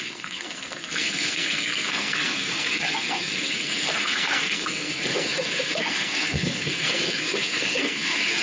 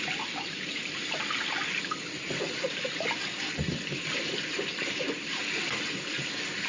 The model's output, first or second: first